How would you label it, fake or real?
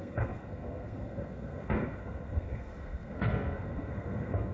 fake